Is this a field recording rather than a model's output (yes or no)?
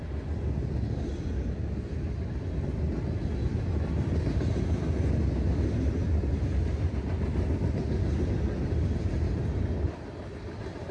yes